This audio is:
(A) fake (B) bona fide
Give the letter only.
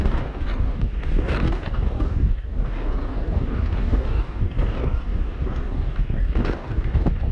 A